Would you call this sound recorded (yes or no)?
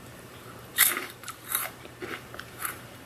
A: no